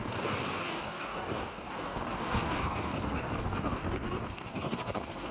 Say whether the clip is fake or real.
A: fake